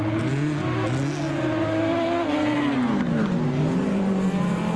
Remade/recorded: recorded